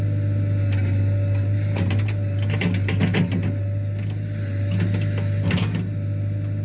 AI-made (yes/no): no